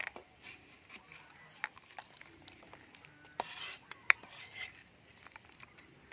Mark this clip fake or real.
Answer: real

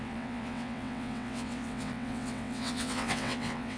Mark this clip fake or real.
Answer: fake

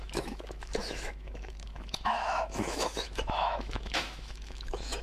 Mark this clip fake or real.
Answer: fake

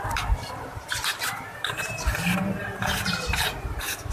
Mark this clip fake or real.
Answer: fake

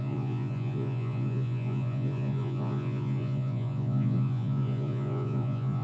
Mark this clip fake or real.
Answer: fake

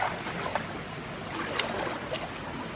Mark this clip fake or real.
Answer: real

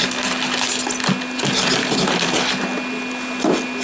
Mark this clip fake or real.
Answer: real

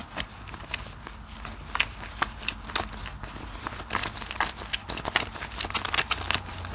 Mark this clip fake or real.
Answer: real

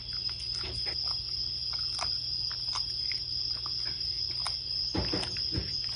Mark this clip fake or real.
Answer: real